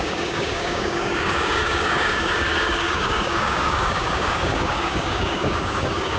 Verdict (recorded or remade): remade